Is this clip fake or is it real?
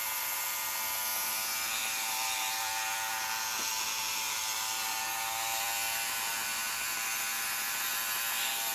fake